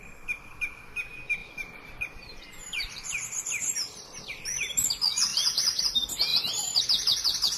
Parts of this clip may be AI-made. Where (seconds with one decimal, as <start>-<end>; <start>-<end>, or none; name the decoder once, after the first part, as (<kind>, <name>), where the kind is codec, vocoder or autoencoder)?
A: 1.4-4.3 (vocoder, BigVGAN v2); 5.3-5.8; 6.3-6.8